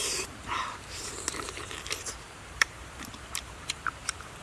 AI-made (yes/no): yes